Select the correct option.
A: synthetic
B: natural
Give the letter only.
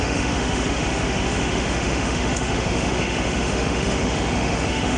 A